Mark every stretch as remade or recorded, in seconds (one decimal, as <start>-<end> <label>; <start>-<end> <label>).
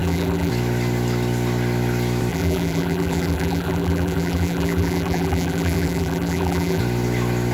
0.0-0.5 remade; 0.5-2.3 recorded; 2.3-6.8 remade; 6.8-7.5 recorded